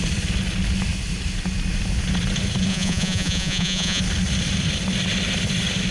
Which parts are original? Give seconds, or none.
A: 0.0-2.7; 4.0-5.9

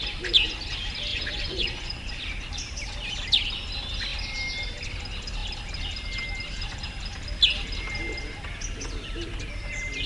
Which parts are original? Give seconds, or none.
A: 0.0-1.1; 2.1-10.1

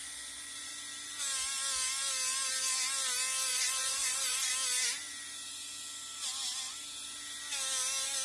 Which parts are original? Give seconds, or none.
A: 0.7-3.5; 4.5-8.2